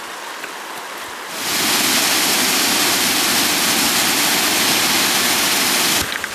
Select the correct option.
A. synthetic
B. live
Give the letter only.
B